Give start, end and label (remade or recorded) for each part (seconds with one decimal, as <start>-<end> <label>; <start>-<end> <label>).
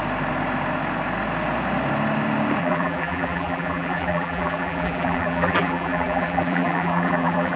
0.0-2.6 recorded; 2.6-7.6 remade